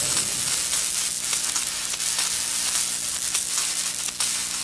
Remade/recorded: recorded